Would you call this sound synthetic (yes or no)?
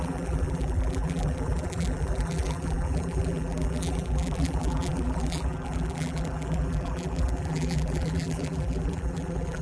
yes